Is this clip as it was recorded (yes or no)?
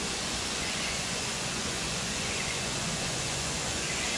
no